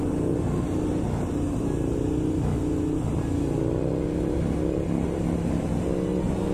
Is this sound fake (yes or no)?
no